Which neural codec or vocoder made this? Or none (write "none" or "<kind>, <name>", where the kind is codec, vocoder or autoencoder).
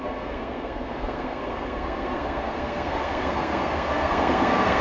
codec, SNAC